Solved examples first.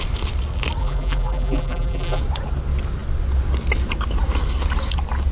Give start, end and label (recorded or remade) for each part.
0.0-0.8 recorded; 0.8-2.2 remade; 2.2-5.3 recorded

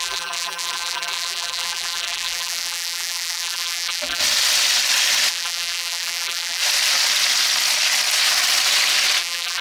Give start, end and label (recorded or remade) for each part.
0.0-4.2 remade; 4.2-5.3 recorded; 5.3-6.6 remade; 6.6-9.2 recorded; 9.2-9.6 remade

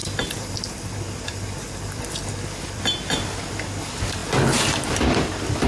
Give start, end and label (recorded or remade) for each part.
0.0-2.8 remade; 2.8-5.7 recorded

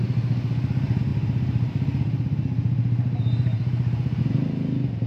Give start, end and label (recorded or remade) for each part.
0.0-1.1 recorded; 1.1-4.2 remade; 4.2-5.1 recorded

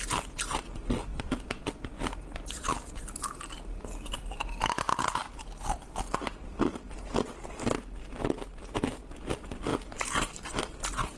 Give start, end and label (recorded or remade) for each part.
0.0-1.1 recorded; 1.1-1.7 remade; 1.7-11.2 recorded

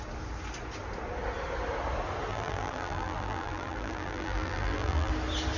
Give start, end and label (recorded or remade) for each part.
0.0-2.3 recorded; 2.3-5.1 remade; 5.1-5.6 recorded

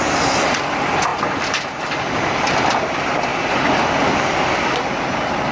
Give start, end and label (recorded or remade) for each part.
0.0-5.5 recorded

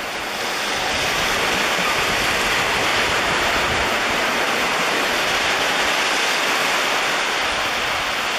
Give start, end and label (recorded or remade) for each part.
0.0-2.9 recorded; 2.9-5.8 remade; 5.8-6.6 recorded; 6.6-7.2 remade; 7.2-8.4 recorded